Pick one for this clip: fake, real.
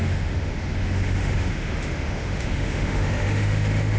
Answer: fake